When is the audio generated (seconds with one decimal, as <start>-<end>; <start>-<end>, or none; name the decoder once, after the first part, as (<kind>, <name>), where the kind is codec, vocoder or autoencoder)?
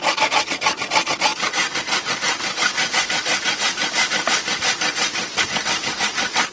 none